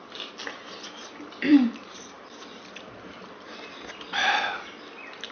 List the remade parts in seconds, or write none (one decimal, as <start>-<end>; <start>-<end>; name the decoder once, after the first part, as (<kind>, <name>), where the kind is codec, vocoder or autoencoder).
1.5-4.7 (vocoder, BigVGAN v2)